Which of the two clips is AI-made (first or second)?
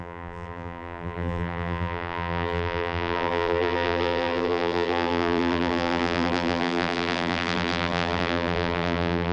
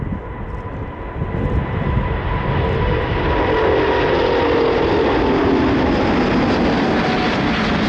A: first